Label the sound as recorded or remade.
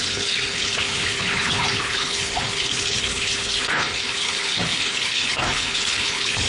remade